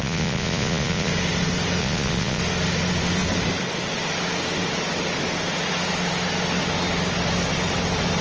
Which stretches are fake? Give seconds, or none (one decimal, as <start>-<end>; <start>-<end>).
0.0-1.1; 1.8-2.4